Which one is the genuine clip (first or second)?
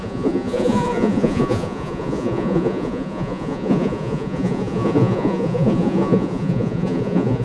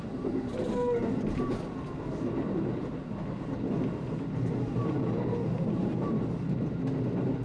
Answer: second